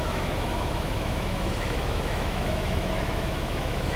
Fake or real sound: fake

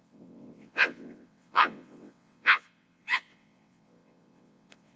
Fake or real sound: fake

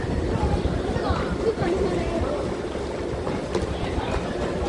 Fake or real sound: fake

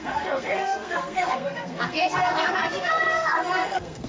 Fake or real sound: fake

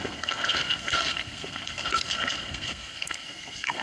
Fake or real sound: fake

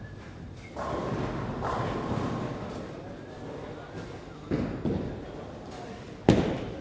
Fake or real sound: real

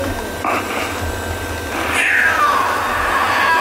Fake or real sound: real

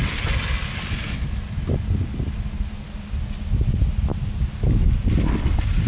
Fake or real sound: real